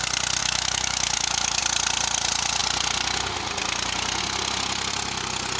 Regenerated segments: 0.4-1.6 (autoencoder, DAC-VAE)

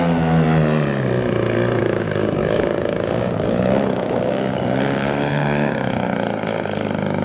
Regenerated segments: 1.8-5.9 (codec, DAC)

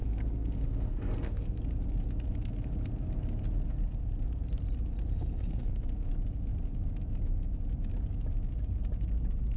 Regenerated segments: 0.0-1.6 (codec, SNAC); 5.1-6.1

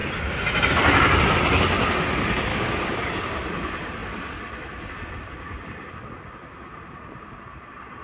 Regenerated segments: 2.5-3.1 (codec, DAC)

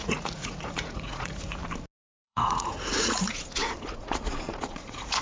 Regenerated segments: 0.0-1.6 (vocoder, Vocos); 2.2-5.2

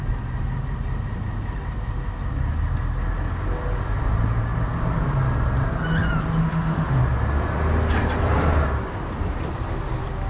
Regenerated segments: 6.4-7.0 (autoencoder, DAC-VAE)